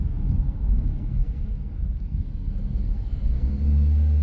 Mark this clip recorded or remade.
remade